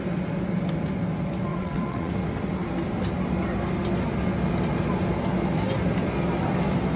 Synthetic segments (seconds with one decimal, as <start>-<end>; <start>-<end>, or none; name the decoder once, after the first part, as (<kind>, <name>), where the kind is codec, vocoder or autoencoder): 1.5-2.1 (vocoder, WaveNeXt)